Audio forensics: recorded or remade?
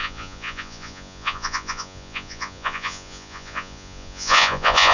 remade